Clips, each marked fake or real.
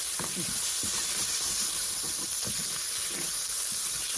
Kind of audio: real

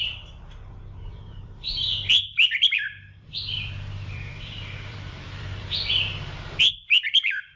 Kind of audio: fake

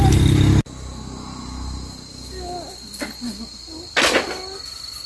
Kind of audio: real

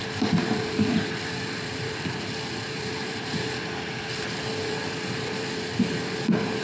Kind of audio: fake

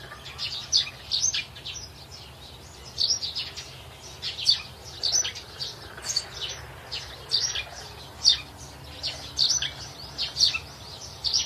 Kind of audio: real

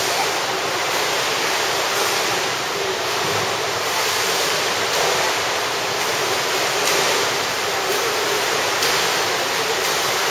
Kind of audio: fake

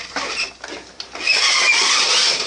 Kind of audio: real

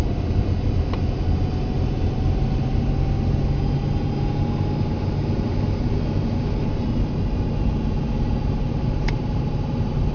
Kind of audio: real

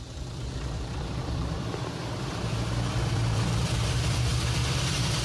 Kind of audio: fake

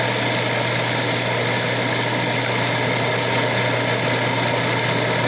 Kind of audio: real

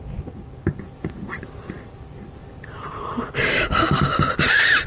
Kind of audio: fake